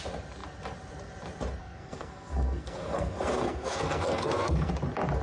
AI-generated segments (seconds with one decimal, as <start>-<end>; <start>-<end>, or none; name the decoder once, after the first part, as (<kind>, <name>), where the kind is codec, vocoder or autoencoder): 1.6-4.7 (codec, SNAC)